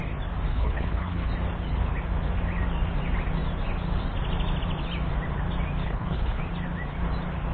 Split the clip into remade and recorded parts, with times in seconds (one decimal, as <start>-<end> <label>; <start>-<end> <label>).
0.0-0.5 recorded; 0.5-1.3 remade; 1.3-5.8 recorded; 5.8-6.4 remade; 6.4-7.5 recorded